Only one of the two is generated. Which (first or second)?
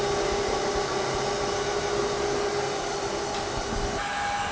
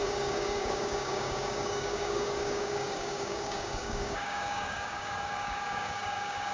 second